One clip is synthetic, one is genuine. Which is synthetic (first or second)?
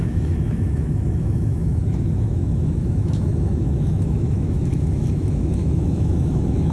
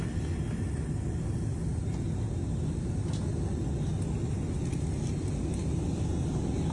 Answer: first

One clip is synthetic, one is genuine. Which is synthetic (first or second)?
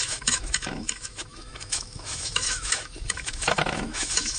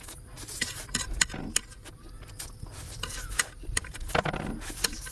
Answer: first